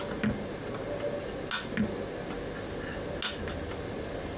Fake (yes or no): no